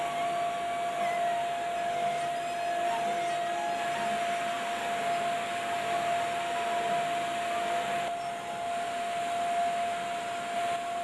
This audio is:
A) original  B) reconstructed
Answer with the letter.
A